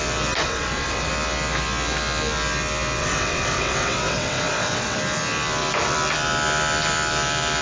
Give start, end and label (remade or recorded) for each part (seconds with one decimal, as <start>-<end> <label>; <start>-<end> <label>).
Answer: 0.0-0.4 recorded; 0.4-1.1 remade; 1.1-3.0 recorded; 3.0-5.0 remade; 5.0-7.6 recorded